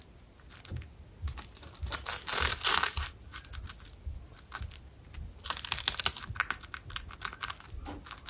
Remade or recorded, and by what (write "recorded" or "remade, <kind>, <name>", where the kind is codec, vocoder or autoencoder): recorded